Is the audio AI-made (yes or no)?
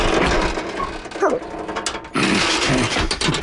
no